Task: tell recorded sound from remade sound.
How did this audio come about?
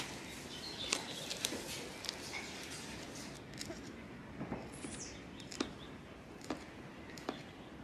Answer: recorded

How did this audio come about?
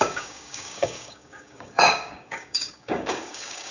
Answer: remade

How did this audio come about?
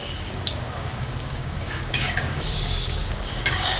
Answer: remade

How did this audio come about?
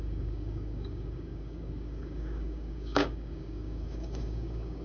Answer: remade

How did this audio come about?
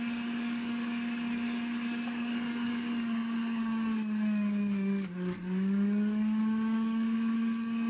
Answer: remade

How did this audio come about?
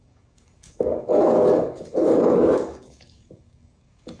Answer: remade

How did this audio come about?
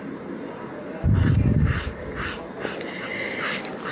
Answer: recorded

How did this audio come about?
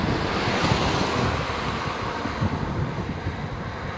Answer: recorded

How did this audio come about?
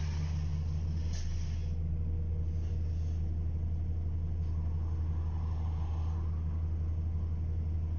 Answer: recorded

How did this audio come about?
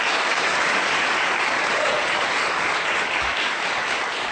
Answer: remade